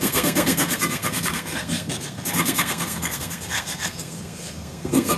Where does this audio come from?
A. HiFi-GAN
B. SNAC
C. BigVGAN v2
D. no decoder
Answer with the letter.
B